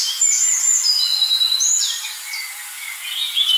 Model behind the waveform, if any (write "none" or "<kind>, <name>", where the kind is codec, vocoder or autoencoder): none